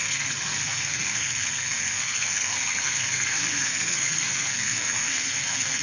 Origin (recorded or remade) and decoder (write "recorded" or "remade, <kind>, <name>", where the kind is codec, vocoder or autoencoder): remade, codec, SNAC